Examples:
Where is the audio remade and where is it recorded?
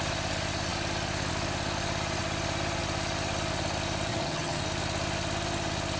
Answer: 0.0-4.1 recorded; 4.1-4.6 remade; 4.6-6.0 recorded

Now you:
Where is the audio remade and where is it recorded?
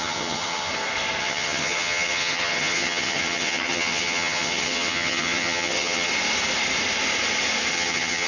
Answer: 0.0-0.7 remade; 0.7-1.2 recorded; 1.2-6.1 remade; 6.1-7.7 recorded; 7.7-8.3 remade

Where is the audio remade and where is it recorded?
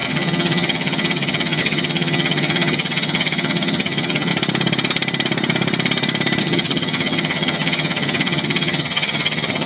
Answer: 0.0-4.3 remade; 4.3-6.4 recorded; 6.4-9.7 remade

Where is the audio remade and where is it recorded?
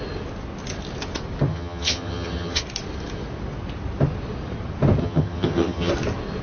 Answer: 0.0-1.5 recorded; 1.5-2.6 remade; 2.6-5.0 recorded; 5.0-5.9 remade; 5.9-6.4 recorded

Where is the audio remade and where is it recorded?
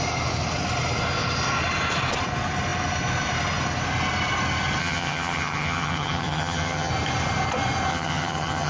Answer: 0.0-4.8 recorded; 4.8-6.9 remade; 6.9-7.9 recorded; 7.9-8.7 remade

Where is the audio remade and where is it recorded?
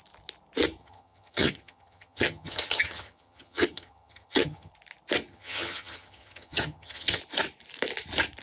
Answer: 0.0-0.8 recorded; 0.8-4.7 remade; 4.7-5.3 recorded; 5.3-7.2 remade; 7.2-8.4 recorded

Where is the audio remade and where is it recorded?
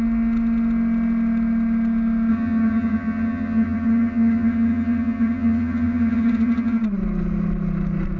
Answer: 0.0-2.3 recorded; 2.3-6.8 remade; 6.8-8.2 recorded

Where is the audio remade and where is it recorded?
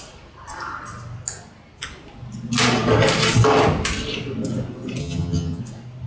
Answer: 0.0-5.0 recorded; 5.0-5.6 remade; 5.6-6.1 recorded